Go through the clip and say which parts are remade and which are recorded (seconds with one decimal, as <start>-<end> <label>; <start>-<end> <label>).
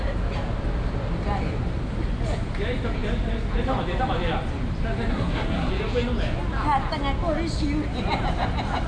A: 0.0-5.1 recorded; 5.1-5.7 remade; 5.7-8.9 recorded